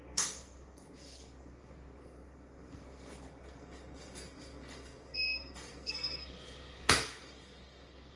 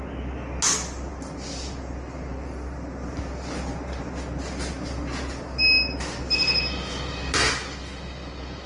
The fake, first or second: first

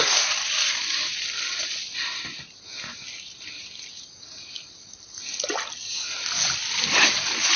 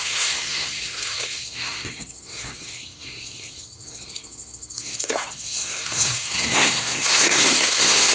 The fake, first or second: second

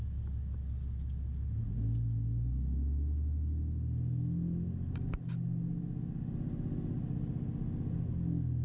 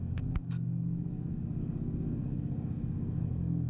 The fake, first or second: second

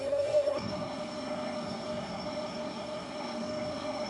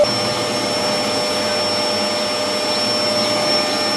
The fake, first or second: first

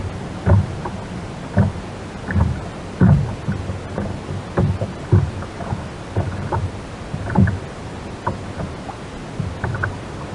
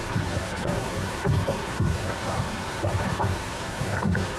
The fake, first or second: second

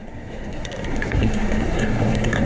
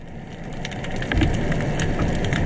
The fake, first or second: first